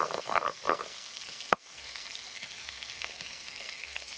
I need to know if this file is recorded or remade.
remade